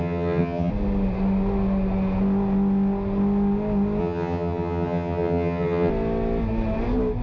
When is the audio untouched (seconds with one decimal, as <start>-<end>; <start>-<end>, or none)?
0.7-4.0; 5.9-7.2